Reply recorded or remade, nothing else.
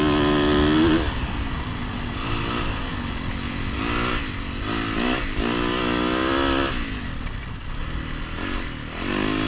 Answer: recorded